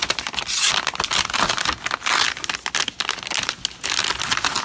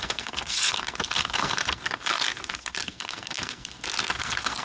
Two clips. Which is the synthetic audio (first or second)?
second